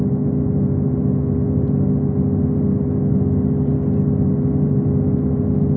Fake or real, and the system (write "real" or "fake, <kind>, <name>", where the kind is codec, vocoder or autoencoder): real